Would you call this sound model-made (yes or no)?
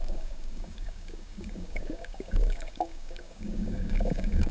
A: yes